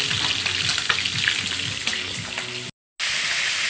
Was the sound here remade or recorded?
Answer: recorded